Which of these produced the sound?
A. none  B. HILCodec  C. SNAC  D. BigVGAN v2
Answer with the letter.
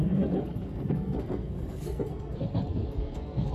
C